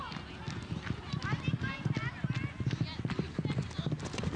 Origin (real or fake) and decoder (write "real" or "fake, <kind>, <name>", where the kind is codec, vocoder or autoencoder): real